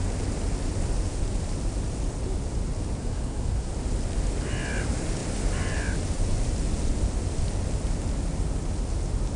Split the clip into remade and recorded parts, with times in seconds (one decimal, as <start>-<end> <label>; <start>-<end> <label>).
0.0-3.0 recorded; 3.0-3.7 remade; 3.7-9.4 recorded